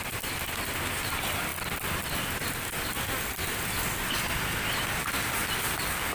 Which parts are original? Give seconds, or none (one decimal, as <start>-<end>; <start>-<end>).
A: 0.0-6.1